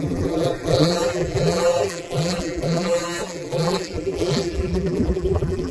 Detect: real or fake fake